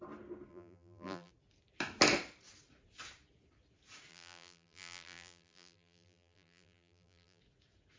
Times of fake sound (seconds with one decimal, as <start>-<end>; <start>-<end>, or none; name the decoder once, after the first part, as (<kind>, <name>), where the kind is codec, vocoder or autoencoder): 0.5-1.3 (vocoder, BigVGAN v2); 4.1-7.4